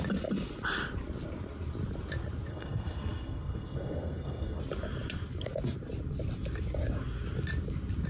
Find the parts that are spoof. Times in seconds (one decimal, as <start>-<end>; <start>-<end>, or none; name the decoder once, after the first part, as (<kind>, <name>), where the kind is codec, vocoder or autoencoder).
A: 2.5-4.6 (codec, SNAC)